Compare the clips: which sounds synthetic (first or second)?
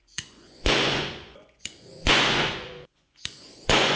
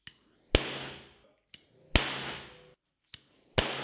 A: first